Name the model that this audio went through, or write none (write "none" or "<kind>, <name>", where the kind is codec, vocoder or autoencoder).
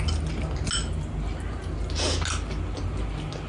none